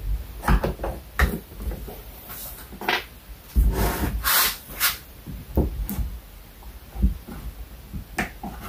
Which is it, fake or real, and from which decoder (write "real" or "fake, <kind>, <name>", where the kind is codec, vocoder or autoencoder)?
real